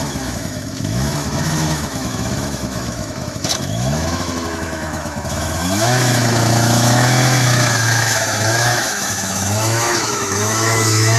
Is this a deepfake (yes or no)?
yes